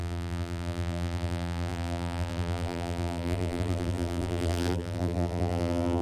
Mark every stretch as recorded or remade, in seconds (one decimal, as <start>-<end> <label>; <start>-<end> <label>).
0.0-6.0 remade